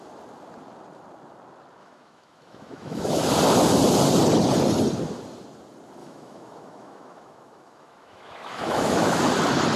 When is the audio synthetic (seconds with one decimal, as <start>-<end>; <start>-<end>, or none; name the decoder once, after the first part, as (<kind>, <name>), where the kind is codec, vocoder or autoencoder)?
1.8-3.2 (autoencoder, DAC-VAE); 6.0-9.2